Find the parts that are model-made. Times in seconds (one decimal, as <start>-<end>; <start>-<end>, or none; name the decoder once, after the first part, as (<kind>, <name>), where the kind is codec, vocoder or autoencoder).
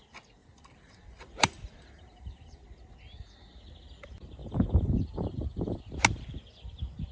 0.4-2.6 (vocoder, BigVGAN v2); 4.4-5.8